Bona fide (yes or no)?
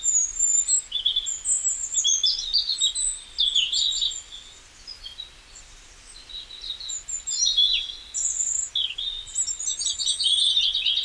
yes